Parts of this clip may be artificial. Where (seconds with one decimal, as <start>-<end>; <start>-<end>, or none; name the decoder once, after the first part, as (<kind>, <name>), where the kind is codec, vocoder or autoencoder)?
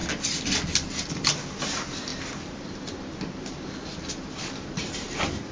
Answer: none